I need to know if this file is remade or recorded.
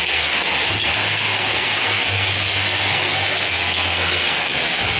remade